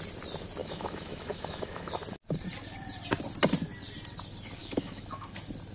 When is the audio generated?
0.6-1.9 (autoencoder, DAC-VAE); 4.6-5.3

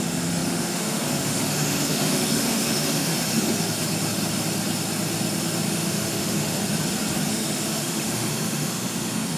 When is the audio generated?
0.0-3.1 (autoencoder, DAC-VAE); 5.7-6.6; 7.3-9.4

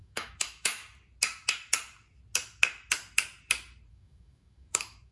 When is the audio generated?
0.0-0.8 (autoencoder, DAC-VAE); 3.9-5.1

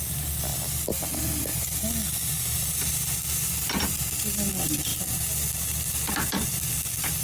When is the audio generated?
none

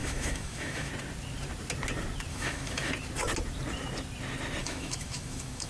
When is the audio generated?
0.0-0.9 (autoencoder, DAC-VAE); 2.3-2.9; 4.6-5.7

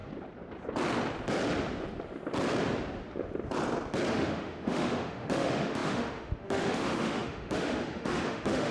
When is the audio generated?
4.1-8.7 (autoencoder, DAC-VAE)

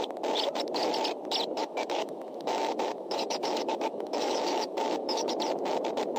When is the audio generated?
1.6-5.3 (autoencoder, DAC-VAE)

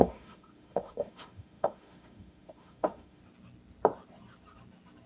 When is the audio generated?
0.0-3.2 (autoencoder, DAC-VAE)